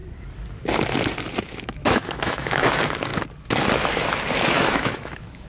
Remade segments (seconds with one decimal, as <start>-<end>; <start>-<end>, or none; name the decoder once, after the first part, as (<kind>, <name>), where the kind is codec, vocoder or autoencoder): 1.4-3.1 (autoencoder, DAC-VAE); 4.4-5.5